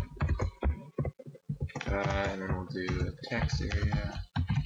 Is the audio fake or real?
real